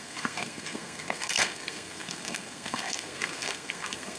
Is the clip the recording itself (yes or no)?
no